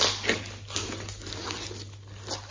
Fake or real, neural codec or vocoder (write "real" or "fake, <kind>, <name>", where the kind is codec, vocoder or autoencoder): real